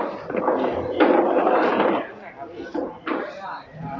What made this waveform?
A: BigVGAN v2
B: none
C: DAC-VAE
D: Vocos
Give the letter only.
A